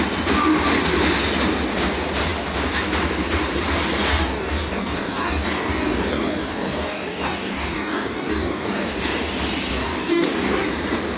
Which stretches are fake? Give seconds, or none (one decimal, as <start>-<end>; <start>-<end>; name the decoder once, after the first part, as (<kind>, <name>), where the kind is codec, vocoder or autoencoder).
4.1-9.0 (codec, DAC); 9.7-10.7